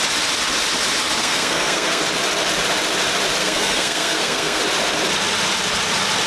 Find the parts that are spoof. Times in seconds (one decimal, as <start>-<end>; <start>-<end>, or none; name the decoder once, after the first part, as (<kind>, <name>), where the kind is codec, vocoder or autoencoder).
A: 1.2-2.0 (codec, SNAC); 3.4-4.6